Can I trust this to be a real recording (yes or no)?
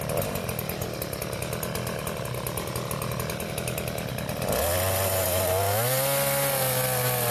yes